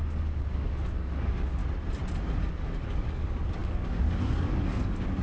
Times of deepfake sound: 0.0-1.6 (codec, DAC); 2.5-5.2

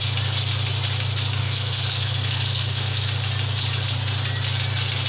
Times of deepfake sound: 1.4-3.0 (codec, SNAC)

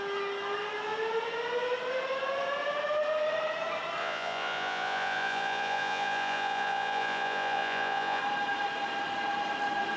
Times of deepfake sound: 4.0-8.2 (vocoder, Vocos)

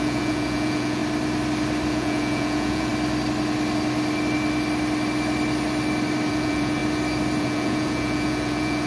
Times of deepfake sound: 0.0-1.0 (vocoder, Vocos); 1.9-2.9; 6.3-6.8; 7.4-8.9

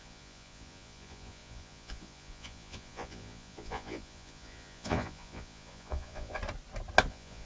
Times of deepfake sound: 0.0-6.4 (vocoder, Vocos); 7.1-7.5

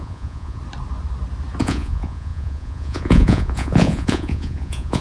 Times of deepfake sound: 0.0-0.6 (vocoder, Vocos); 1.6-5.0